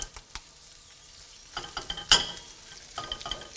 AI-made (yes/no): no